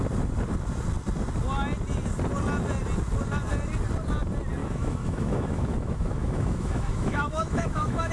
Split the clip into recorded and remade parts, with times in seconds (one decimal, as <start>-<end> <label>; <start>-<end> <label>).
0.0-4.6 recorded; 4.6-8.1 remade